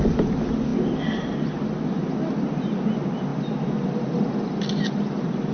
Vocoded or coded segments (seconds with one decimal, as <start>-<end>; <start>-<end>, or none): none

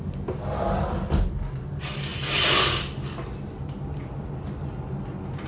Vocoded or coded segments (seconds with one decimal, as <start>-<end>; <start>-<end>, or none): none

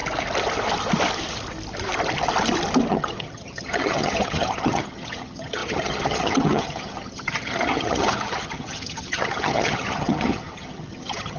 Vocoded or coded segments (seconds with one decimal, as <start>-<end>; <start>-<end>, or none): 2.9-11.4

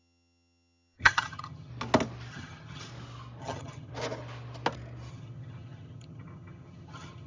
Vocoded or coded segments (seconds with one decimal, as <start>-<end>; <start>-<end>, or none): 0.0-1.7; 2.3-2.9; 3.4-3.9; 5.1-7.3

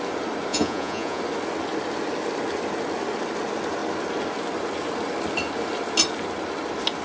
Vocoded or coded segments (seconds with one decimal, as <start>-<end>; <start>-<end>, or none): 0.5-1.2

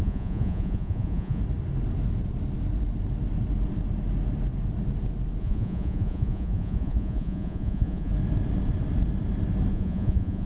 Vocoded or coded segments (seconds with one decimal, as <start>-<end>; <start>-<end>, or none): 0.0-1.4; 5.4-8.1; 9.7-10.5

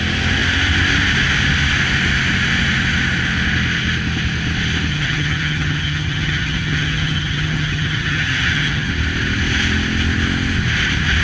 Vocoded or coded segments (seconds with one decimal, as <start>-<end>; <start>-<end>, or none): 4.9-8.9

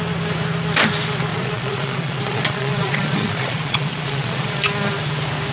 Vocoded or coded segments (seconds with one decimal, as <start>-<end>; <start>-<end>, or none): 1.3-4.6